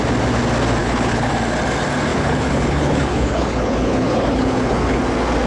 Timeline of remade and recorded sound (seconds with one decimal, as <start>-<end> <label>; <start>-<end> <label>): 0.0-0.8 recorded; 0.8-1.3 remade; 1.3-2.1 recorded; 2.1-5.0 remade; 5.0-5.5 recorded